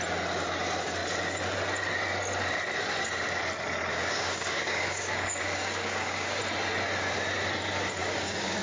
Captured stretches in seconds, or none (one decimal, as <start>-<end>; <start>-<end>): 0.0-3.9; 6.4-8.0